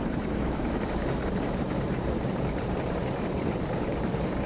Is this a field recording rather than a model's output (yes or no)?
no